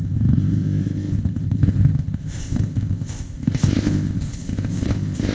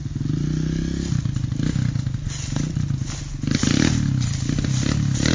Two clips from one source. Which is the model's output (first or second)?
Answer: first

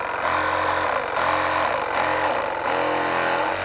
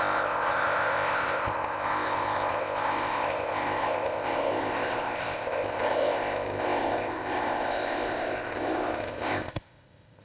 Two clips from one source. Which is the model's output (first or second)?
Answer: second